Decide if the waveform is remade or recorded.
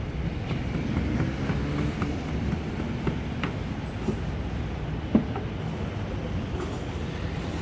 recorded